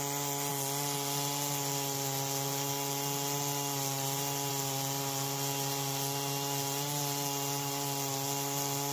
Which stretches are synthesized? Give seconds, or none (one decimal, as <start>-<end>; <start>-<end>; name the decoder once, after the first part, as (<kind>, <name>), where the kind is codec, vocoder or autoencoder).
none